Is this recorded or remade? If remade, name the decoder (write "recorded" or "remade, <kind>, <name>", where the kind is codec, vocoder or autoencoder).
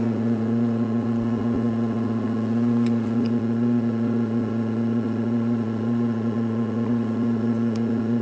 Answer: remade, vocoder, Vocos